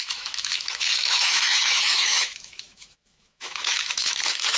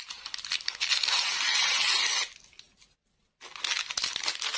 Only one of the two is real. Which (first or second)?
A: second